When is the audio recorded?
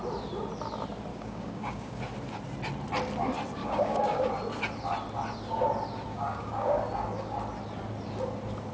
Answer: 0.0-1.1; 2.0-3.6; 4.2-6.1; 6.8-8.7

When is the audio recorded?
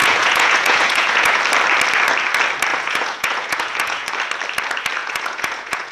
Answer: 1.4-2.7; 4.1-5.0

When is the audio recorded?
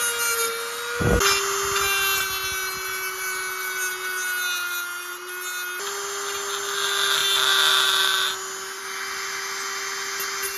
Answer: 0.0-10.6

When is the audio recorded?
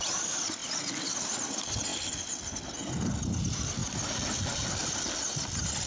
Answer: 0.0-5.9